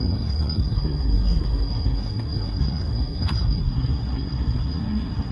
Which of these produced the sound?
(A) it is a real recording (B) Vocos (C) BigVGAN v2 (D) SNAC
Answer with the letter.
D